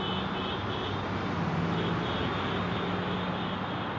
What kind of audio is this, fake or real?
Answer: real